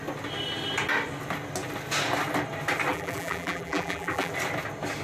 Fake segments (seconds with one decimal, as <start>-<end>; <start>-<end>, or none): 2.9-4.3